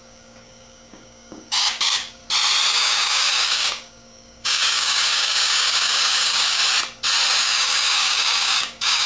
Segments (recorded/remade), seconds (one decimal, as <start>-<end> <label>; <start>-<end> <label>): 0.0-2.2 remade; 2.2-2.7 recorded; 2.7-6.6 remade; 6.6-7.4 recorded; 7.4-9.1 remade